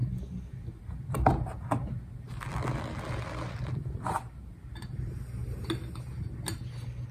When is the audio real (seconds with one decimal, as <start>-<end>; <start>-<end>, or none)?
0.0-7.1